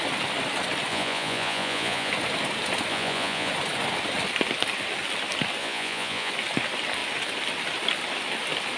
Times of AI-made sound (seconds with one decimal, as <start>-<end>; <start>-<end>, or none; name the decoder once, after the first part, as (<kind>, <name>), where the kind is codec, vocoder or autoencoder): 0.9-2.1 (vocoder, Vocos); 2.9-3.5; 5.6-6.3

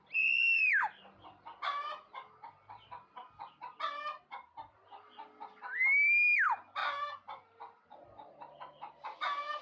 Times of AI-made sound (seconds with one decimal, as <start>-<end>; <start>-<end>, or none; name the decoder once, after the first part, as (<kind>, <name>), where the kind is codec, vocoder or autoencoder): none

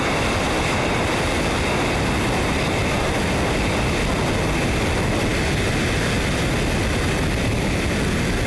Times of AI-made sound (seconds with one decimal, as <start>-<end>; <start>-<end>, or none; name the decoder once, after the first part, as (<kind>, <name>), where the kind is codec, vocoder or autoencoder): none

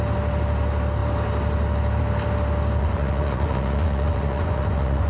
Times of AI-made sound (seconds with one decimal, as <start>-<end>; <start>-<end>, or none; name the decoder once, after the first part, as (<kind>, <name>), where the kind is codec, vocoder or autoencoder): 2.8-5.1 (vocoder, Vocos)